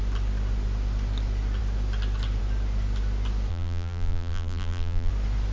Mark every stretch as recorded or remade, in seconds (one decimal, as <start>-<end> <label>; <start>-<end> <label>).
0.0-3.5 recorded; 3.5-5.1 remade; 5.1-5.5 recorded